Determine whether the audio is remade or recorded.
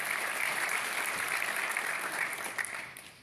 remade